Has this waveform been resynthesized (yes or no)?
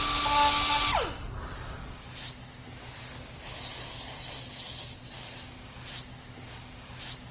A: no